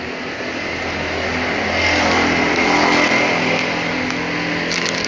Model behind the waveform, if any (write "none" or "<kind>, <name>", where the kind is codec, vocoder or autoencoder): none